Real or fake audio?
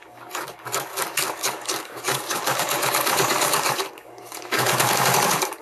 fake